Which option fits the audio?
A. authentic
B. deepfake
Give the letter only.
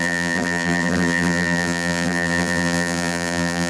B